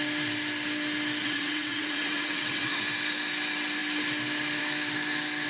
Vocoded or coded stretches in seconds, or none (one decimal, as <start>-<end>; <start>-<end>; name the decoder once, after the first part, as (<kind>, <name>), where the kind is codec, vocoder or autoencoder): 1.2-2.8 (vocoder, WaveNeXt)